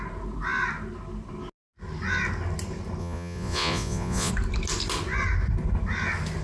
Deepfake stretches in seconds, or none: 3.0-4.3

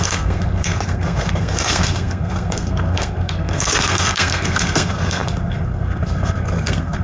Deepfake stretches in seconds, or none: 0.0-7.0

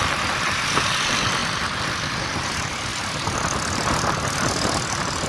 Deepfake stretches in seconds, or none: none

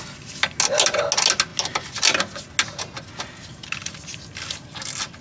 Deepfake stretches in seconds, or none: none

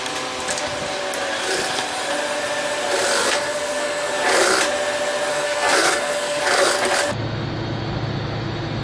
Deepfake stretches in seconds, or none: 3.2-4.1; 5.3-6.4

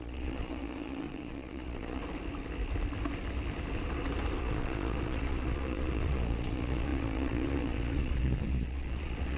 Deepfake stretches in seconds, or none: 0.0-2.0; 4.4-9.4